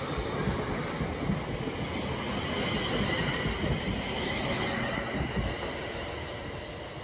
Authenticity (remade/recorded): recorded